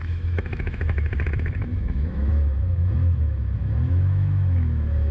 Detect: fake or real fake